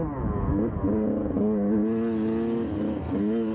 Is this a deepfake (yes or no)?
no